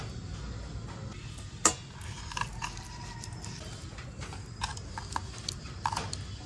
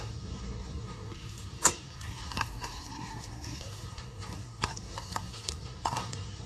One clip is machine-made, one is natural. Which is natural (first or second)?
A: first